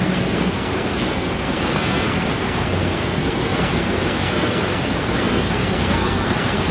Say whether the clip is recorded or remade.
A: remade